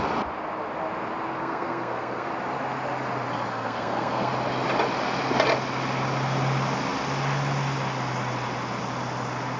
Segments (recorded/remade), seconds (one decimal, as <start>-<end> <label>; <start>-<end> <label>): 0.0-1.4 recorded; 1.4-2.3 remade; 2.3-3.5 recorded; 3.5-4.3 remade; 4.3-9.6 recorded